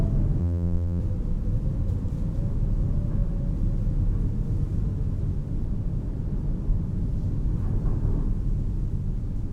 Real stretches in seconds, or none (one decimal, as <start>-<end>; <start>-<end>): 0.0-0.4; 1.0-9.5